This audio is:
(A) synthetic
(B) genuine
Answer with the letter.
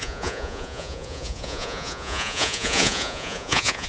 A